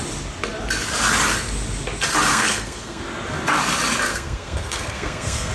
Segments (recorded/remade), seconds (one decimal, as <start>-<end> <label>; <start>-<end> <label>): 0.0-2.3 recorded; 2.3-3.0 remade; 3.0-4.1 recorded; 4.1-5.5 remade